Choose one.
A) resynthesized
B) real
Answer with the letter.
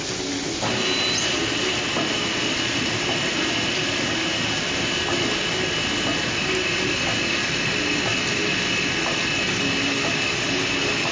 A